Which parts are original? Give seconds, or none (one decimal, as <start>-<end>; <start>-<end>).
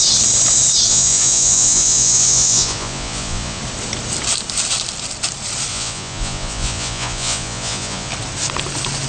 0.0-0.9; 3.6-5.7; 8.1-9.1